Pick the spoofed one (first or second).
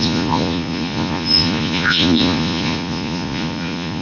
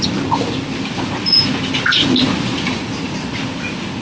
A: first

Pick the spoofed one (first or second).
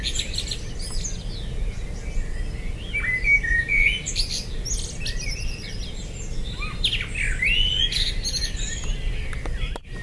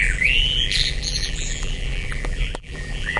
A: second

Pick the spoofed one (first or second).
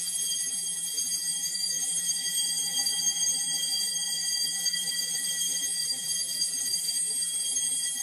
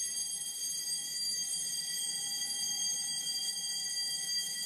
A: first